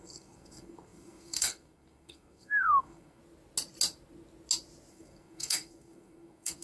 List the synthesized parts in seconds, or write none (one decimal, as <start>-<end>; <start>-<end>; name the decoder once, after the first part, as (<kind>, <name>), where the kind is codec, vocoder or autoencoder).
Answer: 0.0-3.2 (codec, SNAC); 4.9-6.6